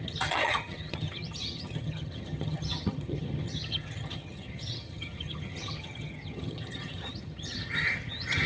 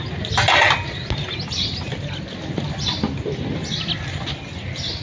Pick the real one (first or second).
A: second